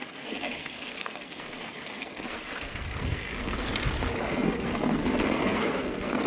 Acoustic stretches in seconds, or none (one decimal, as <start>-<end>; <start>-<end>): 3.7-4.3